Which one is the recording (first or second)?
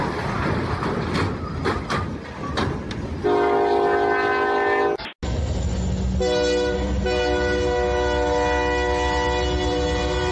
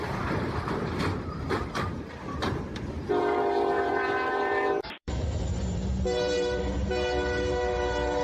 first